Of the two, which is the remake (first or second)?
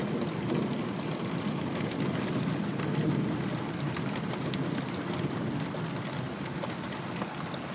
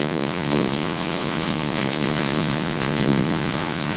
second